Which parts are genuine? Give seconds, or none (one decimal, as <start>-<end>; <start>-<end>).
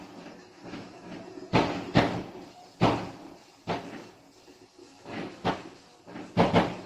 0.0-0.4; 1.1-4.8; 5.5-6.9